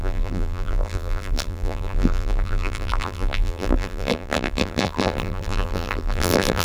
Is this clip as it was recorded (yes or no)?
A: no